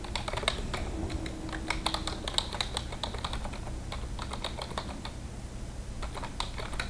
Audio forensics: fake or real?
real